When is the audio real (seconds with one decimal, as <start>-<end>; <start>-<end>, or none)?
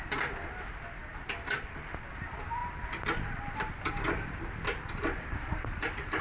0.0-1.1; 2.2-2.6